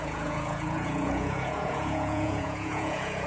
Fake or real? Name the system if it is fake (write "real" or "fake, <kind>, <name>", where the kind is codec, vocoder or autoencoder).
fake, vocoder, Vocos